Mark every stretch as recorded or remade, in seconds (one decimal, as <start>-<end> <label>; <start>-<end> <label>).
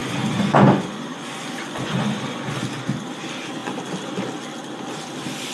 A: 0.0-2.6 remade; 2.6-5.5 recorded